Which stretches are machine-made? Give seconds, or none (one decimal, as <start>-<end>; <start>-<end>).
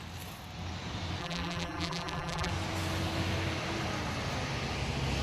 1.2-2.5